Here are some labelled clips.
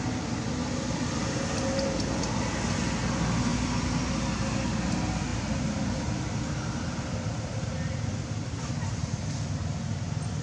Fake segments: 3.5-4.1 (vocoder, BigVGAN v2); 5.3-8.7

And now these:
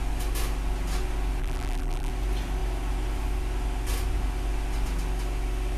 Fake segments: 1.4-2.1 (vocoder, BigVGAN v2)

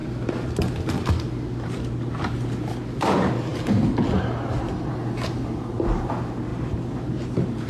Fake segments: 3.5-6.1 (vocoder, BigVGAN v2); 6.5-7.7

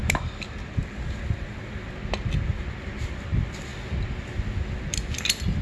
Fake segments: none